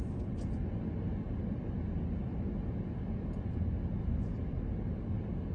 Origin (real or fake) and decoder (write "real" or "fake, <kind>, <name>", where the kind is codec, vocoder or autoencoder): real